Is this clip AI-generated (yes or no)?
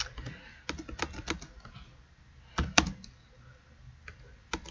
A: no